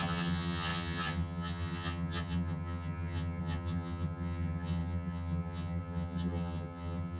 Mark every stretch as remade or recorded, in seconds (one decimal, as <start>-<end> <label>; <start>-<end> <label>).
0.0-7.2 remade